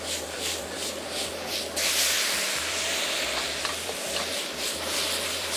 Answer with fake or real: fake